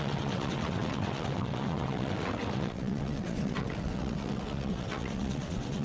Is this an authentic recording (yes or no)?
no